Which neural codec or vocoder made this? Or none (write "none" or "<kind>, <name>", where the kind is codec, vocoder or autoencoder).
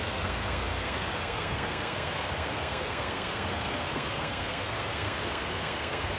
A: codec, SNAC